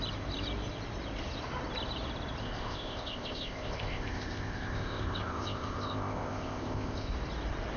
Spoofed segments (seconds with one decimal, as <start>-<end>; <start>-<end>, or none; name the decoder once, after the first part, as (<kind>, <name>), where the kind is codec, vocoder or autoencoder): 2.4-7.1 (codec, ZipCodec)